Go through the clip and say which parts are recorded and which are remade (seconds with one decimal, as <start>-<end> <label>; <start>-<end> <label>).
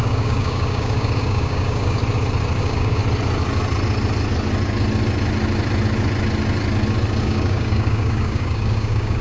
0.0-2.0 remade; 2.0-2.6 recorded; 2.6-3.0 remade; 3.0-7.2 recorded; 7.2-9.2 remade